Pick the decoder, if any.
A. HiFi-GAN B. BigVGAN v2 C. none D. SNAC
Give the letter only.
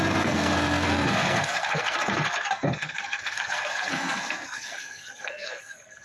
D